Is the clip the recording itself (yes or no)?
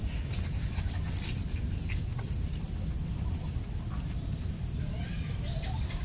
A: yes